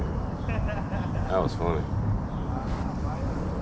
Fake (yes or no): no